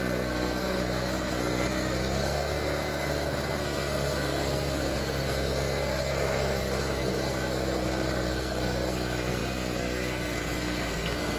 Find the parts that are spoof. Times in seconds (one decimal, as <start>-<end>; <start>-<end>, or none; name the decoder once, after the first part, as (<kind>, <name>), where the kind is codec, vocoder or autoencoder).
0.0-11.4 (codec, SNAC)